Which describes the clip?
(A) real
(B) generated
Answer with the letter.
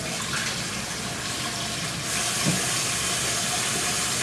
B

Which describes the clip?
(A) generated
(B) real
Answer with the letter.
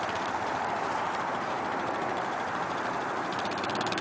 A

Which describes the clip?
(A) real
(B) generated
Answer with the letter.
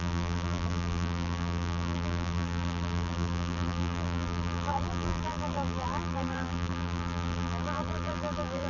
B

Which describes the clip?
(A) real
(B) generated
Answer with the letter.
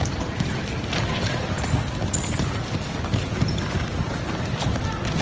A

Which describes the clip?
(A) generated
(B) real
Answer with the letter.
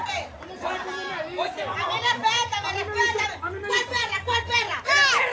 A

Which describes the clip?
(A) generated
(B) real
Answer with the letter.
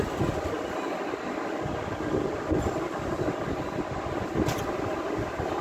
B